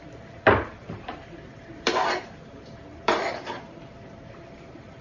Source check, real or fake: fake